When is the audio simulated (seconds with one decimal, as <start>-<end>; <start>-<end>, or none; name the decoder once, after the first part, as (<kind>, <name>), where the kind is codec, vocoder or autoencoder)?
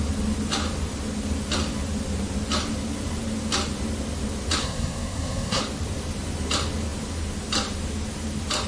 4.6-5.6 (codec, SNAC)